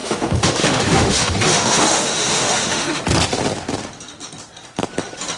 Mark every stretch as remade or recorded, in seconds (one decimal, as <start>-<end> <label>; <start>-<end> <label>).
0.0-3.0 remade; 3.0-5.4 recorded